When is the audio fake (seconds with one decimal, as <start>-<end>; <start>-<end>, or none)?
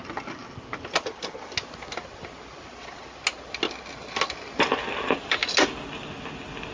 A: none